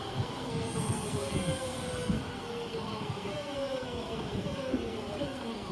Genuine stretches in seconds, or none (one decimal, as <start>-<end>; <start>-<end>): none